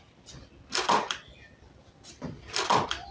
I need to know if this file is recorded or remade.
recorded